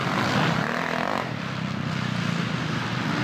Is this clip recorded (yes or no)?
yes